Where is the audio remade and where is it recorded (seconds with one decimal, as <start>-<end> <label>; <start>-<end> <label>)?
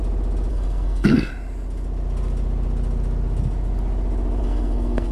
0.0-0.5 recorded; 0.5-1.3 remade; 1.3-4.4 recorded; 4.4-5.1 remade